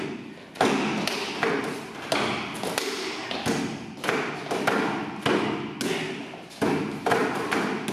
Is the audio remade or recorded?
recorded